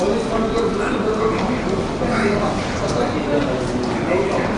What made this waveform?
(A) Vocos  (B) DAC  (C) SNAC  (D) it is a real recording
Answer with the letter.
D